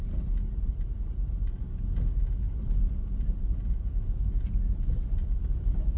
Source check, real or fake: real